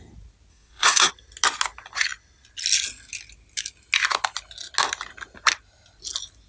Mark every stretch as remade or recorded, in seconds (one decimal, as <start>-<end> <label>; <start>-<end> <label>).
0.0-0.5 recorded; 0.5-1.1 remade; 1.1-6.5 recorded